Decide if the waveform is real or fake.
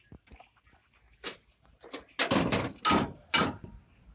real